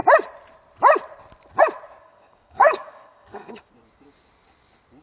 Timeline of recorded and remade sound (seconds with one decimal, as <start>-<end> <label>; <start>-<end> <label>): 0.0-2.0 recorded; 2.0-3.7 remade; 3.7-5.0 recorded